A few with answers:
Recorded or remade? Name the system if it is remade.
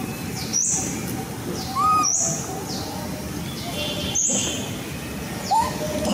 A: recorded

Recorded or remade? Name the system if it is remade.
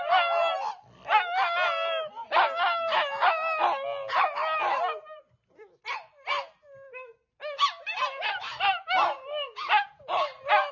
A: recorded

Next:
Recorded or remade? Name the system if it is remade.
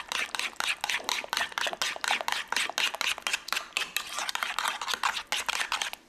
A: recorded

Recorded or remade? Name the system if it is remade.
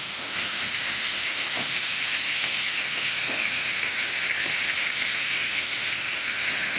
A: remade, autoencoder, DAC-VAE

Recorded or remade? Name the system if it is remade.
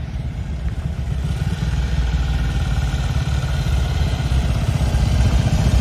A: remade, vocoder, BigVGAN v2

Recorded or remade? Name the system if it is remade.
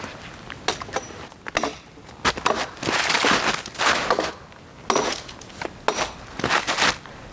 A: recorded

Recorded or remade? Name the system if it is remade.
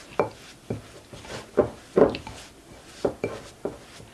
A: recorded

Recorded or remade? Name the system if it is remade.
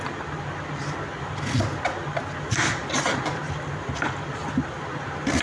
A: recorded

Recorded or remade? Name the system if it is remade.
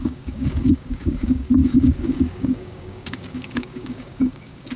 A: remade, codec, DAC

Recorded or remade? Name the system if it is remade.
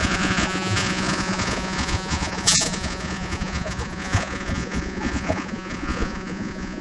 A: remade, vocoder, Vocos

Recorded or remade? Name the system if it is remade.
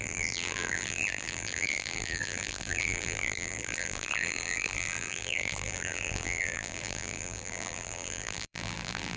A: remade, vocoder, BigVGAN v2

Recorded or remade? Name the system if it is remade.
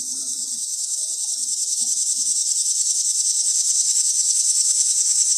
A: remade, codec, DAC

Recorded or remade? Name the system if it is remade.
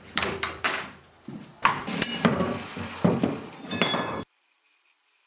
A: remade, vocoder, BigVGAN v2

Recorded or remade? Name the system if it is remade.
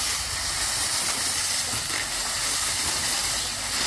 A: recorded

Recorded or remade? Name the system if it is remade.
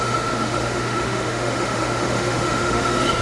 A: remade, autoencoder, DAC-VAE